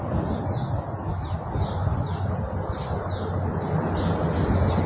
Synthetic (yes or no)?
no